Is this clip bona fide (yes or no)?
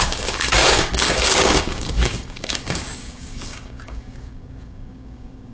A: no